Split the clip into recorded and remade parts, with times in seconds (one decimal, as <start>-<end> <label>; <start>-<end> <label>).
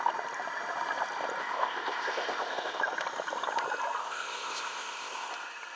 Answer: 0.0-1.4 recorded; 1.4-2.8 remade; 2.8-4.0 recorded; 4.0-5.3 remade; 5.3-5.8 recorded